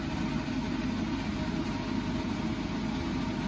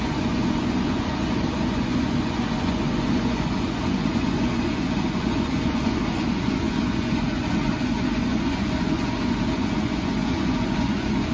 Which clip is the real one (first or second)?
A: first